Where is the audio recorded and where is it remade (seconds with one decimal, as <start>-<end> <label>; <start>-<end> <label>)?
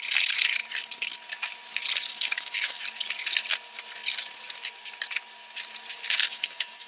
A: 0.0-2.1 recorded; 2.1-2.8 remade; 2.8-6.2 recorded; 6.2-6.9 remade